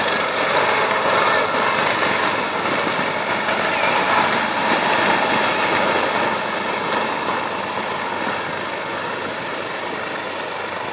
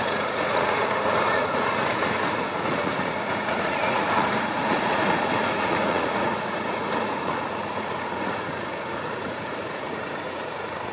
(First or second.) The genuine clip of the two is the first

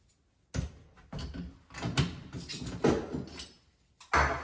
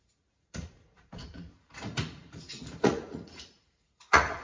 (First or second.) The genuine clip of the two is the first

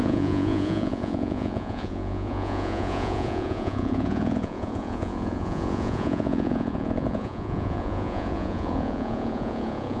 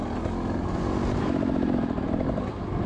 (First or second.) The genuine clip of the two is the second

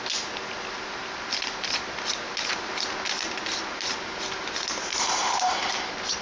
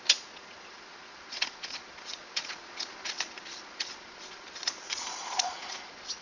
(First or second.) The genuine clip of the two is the first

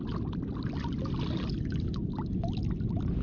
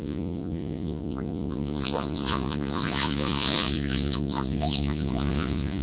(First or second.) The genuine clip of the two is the first